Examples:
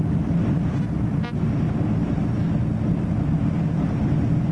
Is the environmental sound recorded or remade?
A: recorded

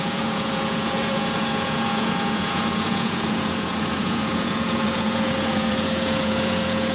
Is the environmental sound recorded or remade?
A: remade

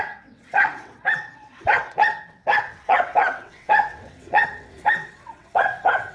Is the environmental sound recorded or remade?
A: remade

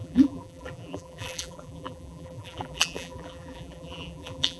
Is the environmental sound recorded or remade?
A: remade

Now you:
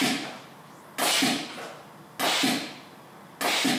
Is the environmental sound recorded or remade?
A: recorded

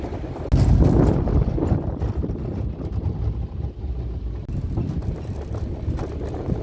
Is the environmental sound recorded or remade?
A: recorded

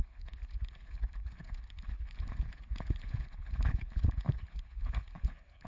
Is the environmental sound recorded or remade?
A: remade